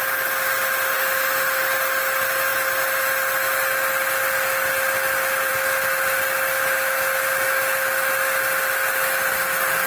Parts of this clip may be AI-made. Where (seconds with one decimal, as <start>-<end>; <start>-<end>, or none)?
0.9-1.6